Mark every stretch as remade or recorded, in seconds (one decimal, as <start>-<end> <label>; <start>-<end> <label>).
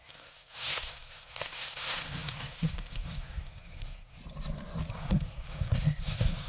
0.0-4.2 remade; 4.2-4.9 recorded; 4.9-6.5 remade